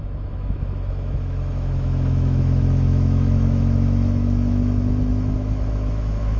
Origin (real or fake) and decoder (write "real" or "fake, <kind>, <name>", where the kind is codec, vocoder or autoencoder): fake, autoencoder, DAC-VAE